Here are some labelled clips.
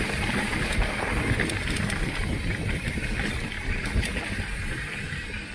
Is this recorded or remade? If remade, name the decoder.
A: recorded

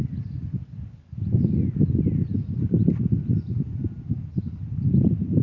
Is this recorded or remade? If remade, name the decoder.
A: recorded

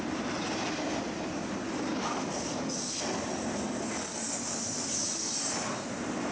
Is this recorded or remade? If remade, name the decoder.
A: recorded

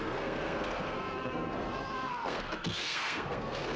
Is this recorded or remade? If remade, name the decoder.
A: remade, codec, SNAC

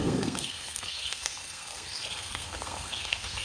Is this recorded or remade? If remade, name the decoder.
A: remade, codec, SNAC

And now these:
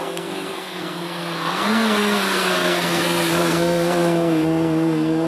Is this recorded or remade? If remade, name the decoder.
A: remade, codec, SNAC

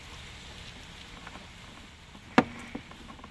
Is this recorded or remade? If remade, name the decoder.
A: recorded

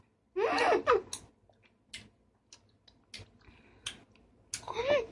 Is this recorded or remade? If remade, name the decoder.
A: recorded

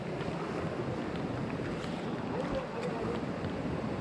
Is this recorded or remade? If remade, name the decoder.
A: recorded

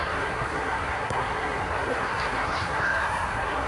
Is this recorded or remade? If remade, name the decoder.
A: remade, codec, SNAC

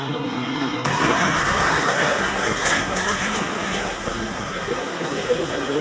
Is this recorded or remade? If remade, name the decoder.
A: remade, codec, SNAC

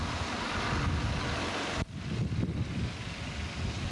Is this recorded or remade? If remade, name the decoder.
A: recorded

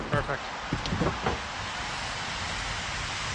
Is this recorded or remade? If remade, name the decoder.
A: recorded